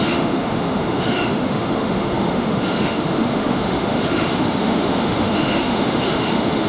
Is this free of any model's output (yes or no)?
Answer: no